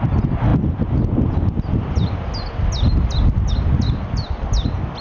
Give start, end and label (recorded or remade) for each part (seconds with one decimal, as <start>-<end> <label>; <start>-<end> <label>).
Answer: 0.0-5.0 recorded